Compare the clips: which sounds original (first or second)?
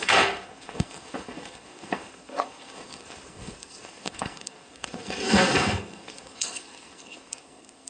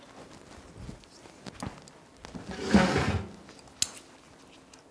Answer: second